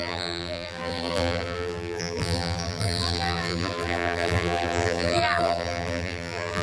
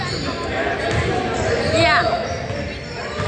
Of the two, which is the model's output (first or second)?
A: first